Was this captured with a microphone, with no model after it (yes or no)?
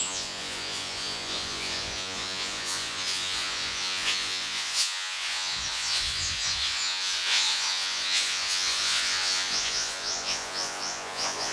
no